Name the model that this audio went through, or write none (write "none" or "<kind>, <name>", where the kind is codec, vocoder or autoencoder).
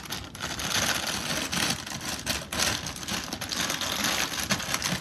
none